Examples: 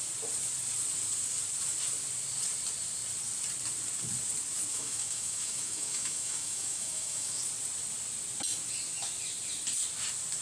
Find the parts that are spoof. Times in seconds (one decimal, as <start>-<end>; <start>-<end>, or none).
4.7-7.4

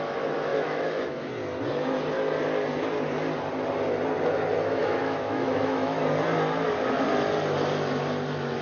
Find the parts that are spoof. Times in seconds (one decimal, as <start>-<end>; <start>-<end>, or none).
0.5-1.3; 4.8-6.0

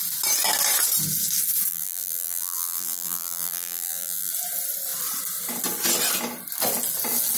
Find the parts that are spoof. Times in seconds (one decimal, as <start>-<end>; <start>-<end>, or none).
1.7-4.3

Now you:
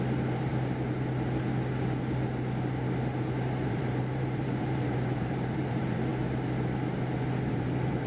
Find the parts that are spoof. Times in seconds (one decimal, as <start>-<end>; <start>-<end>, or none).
0.0-0.5; 3.7-6.1; 7.5-8.1

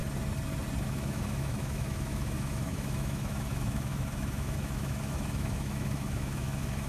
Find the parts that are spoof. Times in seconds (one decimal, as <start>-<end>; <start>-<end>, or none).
0.8-6.9

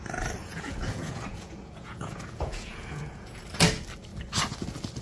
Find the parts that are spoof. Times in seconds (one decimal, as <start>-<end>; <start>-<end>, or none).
0.4-3.4

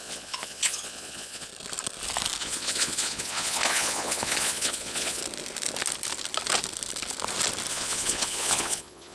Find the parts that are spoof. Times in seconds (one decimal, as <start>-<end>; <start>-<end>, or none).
0.0-1.5; 2.4-5.2; 7.7-9.1